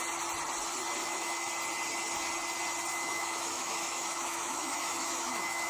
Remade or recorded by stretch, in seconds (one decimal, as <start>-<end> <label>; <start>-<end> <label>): 0.0-1.0 recorded; 1.0-1.5 remade; 1.5-2.9 recorded; 2.9-5.7 remade